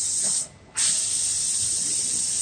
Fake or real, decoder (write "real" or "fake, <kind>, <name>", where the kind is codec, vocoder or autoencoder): real